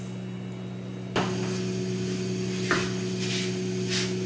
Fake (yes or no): no